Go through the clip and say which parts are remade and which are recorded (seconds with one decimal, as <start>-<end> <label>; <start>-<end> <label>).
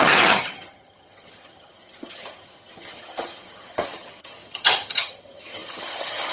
0.0-6.3 remade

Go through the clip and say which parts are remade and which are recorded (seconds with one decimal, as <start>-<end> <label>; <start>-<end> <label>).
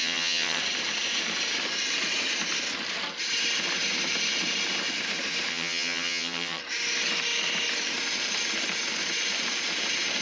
0.0-0.6 remade; 0.6-5.5 recorded; 5.5-6.6 remade; 6.6-10.2 recorded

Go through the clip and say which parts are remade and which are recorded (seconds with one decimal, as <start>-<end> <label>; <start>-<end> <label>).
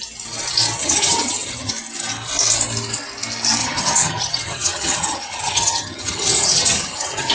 0.0-0.8 recorded; 0.8-1.7 remade; 1.7-3.6 recorded; 3.6-7.3 remade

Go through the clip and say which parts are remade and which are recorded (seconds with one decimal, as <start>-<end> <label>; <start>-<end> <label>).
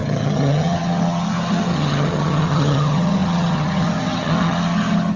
0.0-5.2 remade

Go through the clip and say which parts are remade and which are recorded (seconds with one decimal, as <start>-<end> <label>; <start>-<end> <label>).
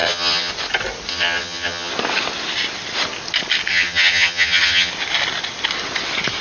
0.0-0.5 remade; 0.5-1.1 recorded; 1.1-1.9 remade; 1.9-3.7 recorded; 3.7-4.9 remade; 4.9-6.4 recorded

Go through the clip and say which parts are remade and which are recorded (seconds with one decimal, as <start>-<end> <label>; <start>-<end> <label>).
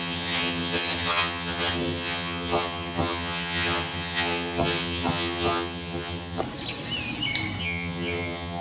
0.0-6.4 remade; 6.4-7.6 recorded; 7.6-8.6 remade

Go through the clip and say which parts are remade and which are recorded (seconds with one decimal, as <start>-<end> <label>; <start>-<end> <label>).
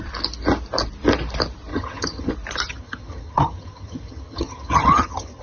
0.0-1.7 recorded; 1.7-2.3 remade; 2.3-2.7 recorded; 2.7-5.4 remade